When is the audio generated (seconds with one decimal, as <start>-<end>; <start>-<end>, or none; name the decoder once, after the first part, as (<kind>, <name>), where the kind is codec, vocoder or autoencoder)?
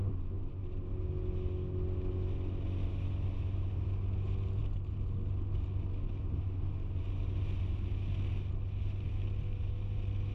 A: none